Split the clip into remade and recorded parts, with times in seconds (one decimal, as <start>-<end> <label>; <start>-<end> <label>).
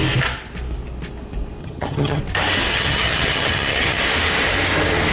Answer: 0.0-1.6 recorded; 1.6-2.2 remade; 2.2-2.7 recorded; 2.7-4.0 remade; 4.0-5.1 recorded